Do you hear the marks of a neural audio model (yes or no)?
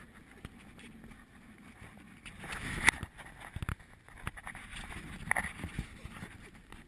no